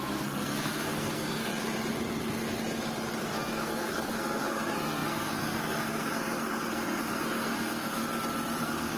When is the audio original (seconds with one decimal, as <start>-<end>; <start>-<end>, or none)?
1.5-3.2; 8.0-8.6